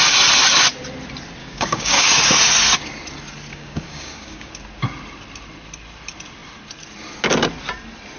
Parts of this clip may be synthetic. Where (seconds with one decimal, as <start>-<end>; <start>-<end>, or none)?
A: 1.4-2.1; 3.5-4.5